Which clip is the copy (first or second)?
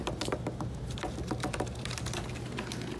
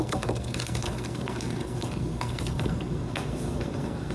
second